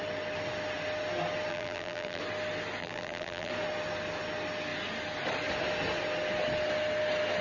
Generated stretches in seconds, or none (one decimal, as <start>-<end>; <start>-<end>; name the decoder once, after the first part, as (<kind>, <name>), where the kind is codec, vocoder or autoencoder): 1.5-2.2 (vocoder, BigVGAN v2); 2.8-3.5